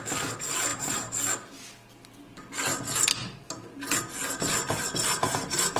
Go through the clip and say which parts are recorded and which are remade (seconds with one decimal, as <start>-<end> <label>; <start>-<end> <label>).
0.0-0.7 recorded; 0.7-1.2 remade; 1.2-5.8 recorded